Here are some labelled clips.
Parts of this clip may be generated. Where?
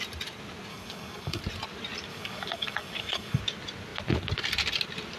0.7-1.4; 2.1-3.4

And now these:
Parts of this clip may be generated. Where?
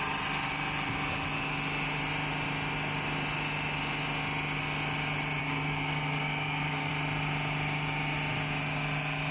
5.4-6.9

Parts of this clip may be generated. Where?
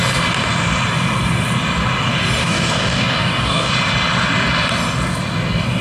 2.4-3.7